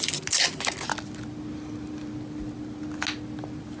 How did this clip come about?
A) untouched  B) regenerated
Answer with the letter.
A